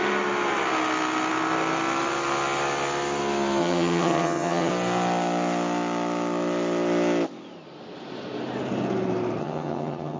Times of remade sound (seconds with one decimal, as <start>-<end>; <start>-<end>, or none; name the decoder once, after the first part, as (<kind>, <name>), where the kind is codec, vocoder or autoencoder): 3.6-4.7 (vocoder, HiFi-GAN); 9.4-10.2